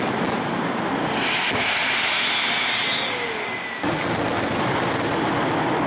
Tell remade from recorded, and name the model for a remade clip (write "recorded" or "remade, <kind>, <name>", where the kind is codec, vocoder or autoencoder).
recorded